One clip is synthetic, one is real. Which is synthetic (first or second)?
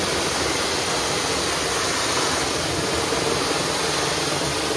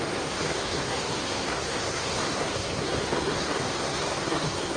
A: second